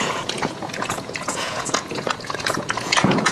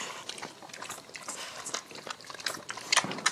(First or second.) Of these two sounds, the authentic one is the second